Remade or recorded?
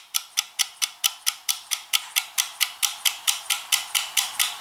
recorded